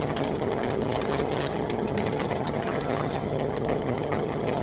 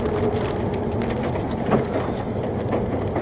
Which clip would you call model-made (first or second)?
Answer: first